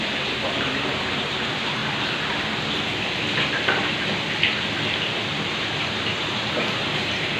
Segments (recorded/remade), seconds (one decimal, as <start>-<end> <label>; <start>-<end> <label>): 0.0-1.8 remade; 1.8-5.3 recorded; 5.3-7.4 remade